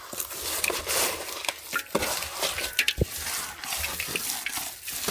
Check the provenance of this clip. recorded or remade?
recorded